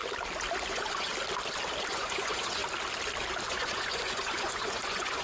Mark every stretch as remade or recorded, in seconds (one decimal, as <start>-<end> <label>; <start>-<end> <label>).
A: 0.0-0.7 recorded; 0.7-1.1 remade; 1.1-1.9 recorded; 1.9-2.6 remade; 2.6-3.5 recorded; 3.5-5.2 remade